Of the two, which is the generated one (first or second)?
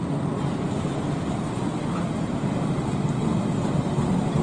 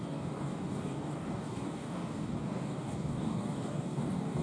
second